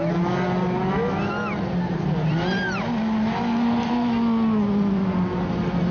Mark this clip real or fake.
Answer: real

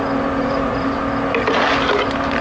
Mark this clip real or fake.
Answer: real